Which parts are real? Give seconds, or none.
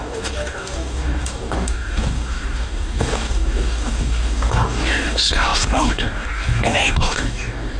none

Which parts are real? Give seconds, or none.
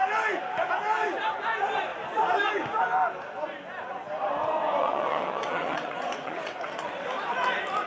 0.0-4.8; 7.1-7.9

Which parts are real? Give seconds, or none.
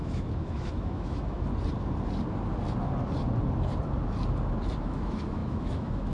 1.5-4.8